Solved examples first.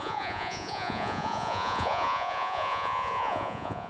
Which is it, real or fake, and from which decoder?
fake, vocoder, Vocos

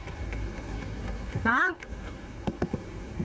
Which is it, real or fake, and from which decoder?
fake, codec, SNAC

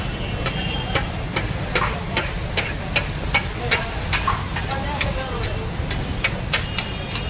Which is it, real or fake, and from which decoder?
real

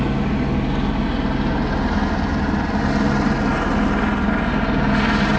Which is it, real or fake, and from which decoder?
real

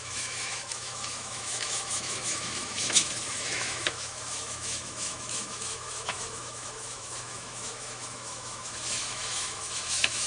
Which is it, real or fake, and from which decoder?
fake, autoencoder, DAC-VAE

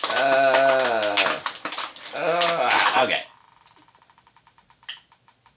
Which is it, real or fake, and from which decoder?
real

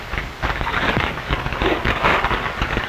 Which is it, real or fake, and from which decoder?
fake, codec, DAC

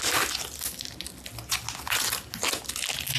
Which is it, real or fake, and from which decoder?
real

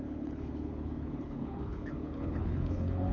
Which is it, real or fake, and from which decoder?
fake, codec, HILCodec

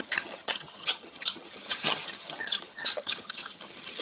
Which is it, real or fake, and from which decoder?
fake, vocoder, HiFi-GAN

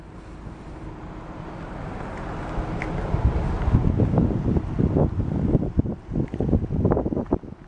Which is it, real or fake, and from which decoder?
real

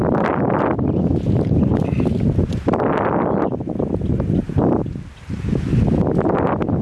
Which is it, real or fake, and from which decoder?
real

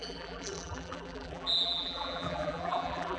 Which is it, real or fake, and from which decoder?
fake, vocoder, BigVGAN v2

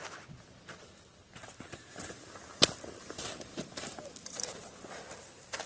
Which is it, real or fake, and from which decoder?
real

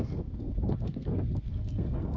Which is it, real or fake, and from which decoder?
fake, codec, SNAC